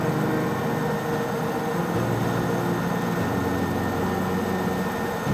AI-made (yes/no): no